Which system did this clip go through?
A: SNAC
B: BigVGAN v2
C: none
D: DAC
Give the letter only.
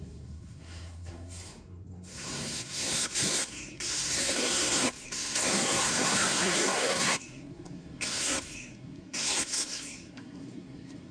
A